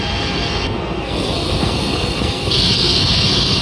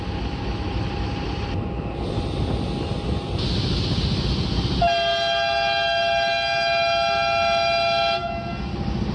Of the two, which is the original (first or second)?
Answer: second